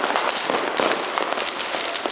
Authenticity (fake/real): real